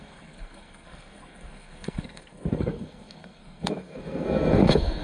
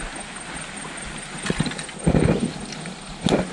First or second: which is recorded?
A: second